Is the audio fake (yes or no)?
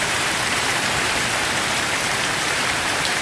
yes